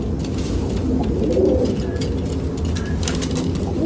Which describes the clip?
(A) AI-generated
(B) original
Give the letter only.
B